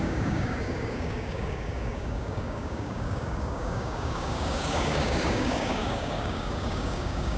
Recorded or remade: remade